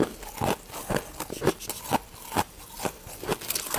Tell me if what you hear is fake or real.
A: real